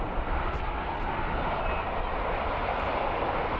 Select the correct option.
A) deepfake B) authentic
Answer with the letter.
B